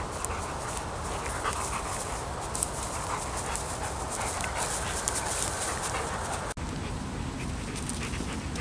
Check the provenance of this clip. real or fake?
real